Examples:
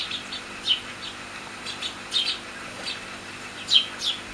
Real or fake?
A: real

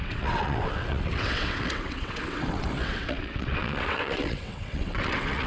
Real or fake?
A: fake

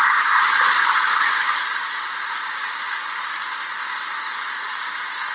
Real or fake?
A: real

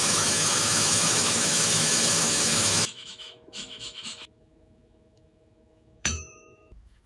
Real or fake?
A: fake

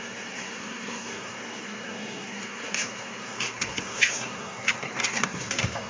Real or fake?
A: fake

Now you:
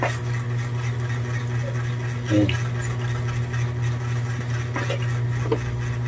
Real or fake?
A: real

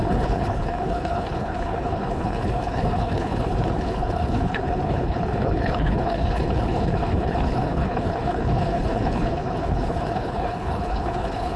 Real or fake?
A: fake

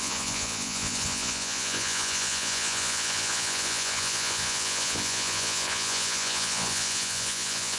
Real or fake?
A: fake